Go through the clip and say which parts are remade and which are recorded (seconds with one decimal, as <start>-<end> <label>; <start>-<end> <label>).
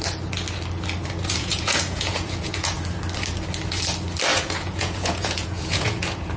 0.0-1.2 recorded; 1.2-2.7 remade; 2.7-4.3 recorded; 4.3-6.4 remade